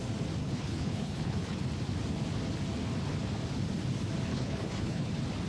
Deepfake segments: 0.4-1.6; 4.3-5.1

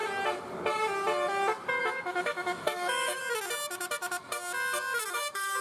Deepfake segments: 1.8-3.2; 5.1-5.6

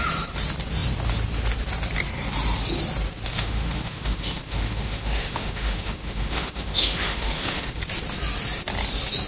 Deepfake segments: 3.3-7.8

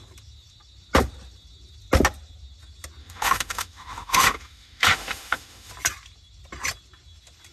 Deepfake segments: 3.0-5.7

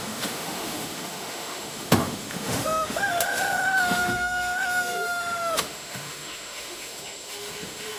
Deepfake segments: 0.0-8.0

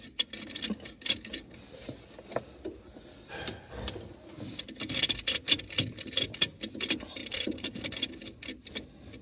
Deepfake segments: 7.2-7.8

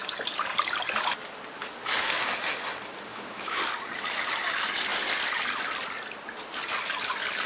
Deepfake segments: 3.1-3.6